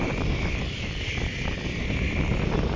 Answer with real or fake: real